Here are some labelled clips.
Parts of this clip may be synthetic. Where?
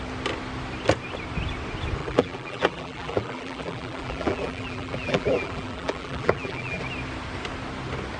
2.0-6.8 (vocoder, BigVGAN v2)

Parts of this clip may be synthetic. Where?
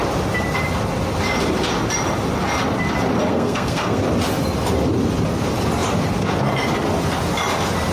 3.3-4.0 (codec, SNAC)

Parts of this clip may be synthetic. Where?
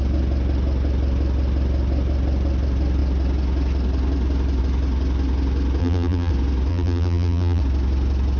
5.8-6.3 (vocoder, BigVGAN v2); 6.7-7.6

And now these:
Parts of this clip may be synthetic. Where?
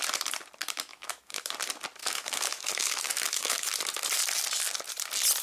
0.9-1.5 (autoencoder, DAC-VAE); 2.0-3.7